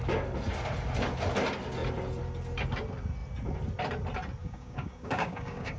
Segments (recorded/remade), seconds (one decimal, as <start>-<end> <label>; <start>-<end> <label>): 0.0-4.4 recorded; 4.4-5.8 remade